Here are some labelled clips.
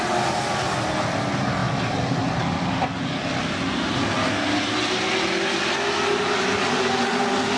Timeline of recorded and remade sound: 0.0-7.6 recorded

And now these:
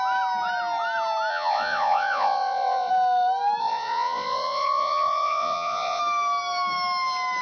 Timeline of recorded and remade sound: 0.0-1.3 recorded; 1.3-2.9 remade; 2.9-3.6 recorded; 3.6-6.0 remade; 6.0-7.4 recorded

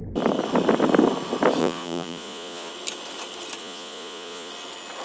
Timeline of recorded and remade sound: 0.0-1.6 recorded; 1.6-2.7 remade; 2.7-3.6 recorded; 3.6-4.5 remade; 4.5-5.0 recorded